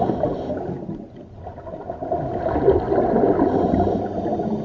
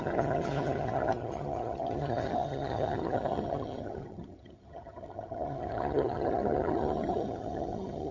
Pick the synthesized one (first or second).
second